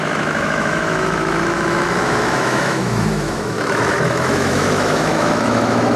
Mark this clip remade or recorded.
remade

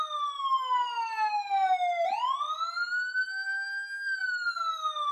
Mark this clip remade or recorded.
recorded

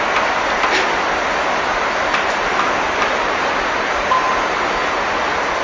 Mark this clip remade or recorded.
recorded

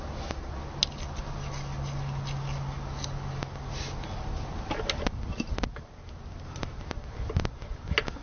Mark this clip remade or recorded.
recorded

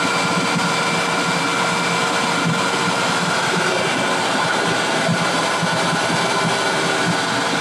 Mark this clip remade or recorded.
recorded